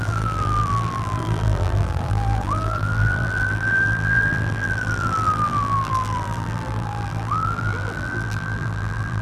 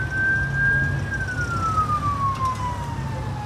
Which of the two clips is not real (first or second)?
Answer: first